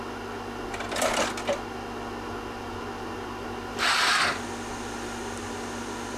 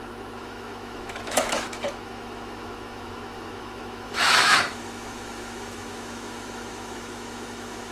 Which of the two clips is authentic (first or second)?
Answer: first